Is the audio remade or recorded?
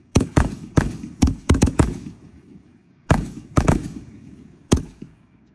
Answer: remade